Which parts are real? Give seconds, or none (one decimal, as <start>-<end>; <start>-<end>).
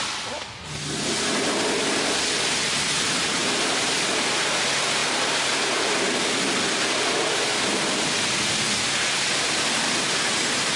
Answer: 0.0-3.4; 4.1-10.8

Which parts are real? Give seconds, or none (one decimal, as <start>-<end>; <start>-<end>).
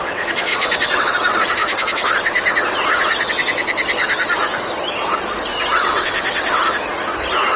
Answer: 0.0-0.5; 1.1-5.5; 6.6-7.6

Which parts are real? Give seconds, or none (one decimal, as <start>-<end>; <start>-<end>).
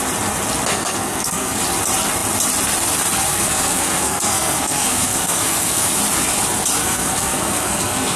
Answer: 0.0-0.7; 1.6-3.3; 6.0-6.8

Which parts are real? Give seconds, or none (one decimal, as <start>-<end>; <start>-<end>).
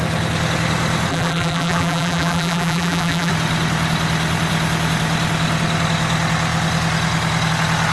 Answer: 0.0-1.1; 3.3-7.9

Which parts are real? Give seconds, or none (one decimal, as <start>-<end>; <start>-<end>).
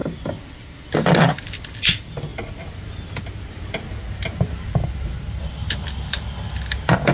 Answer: 0.0-7.1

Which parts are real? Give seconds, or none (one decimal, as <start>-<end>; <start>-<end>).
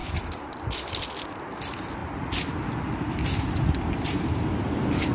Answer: 0.8-5.1